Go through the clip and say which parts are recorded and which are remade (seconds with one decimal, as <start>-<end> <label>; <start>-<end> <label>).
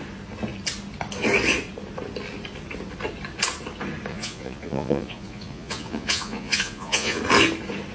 0.0-4.1 recorded; 4.1-7.2 remade; 7.2-7.9 recorded